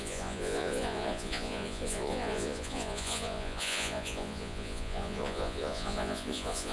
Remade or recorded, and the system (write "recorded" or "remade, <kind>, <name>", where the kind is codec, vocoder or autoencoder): remade, vocoder, Vocos